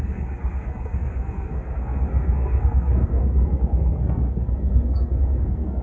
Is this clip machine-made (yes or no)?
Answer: yes